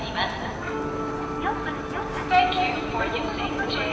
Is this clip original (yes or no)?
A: yes